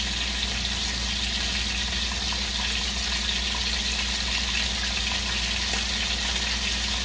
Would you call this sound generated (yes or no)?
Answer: no